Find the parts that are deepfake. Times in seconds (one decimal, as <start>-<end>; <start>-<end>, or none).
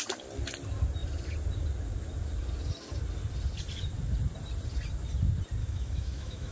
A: 5.6-6.5